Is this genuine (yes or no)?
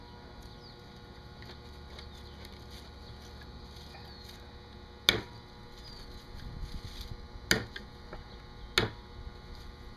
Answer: yes